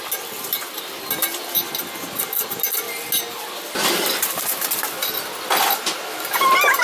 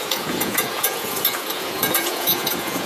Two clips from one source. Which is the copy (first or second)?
second